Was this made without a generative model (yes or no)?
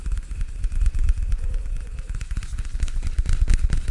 yes